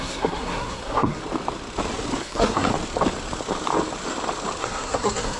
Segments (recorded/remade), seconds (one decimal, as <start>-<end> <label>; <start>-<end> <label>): 0.0-1.2 remade; 1.2-2.2 recorded; 2.2-2.7 remade; 2.7-4.6 recorded; 4.6-5.4 remade